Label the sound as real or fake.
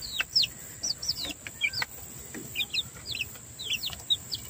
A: real